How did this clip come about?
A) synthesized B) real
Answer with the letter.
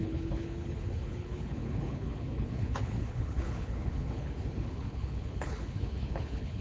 A